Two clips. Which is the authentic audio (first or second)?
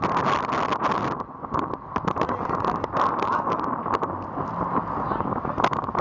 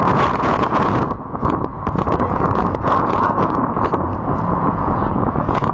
first